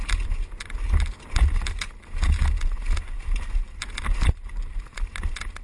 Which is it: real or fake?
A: real